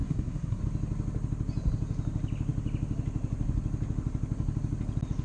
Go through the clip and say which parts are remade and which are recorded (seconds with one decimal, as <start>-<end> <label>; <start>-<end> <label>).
0.0-0.6 remade; 0.6-5.2 recorded